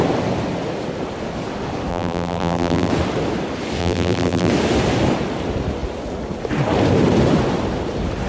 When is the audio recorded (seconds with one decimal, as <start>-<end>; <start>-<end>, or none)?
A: 0.0-1.9; 2.9-3.8; 4.5-8.3